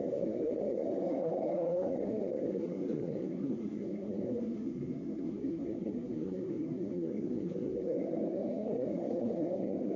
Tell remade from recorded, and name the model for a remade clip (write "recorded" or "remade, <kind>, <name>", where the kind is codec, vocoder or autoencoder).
remade, codec, SNAC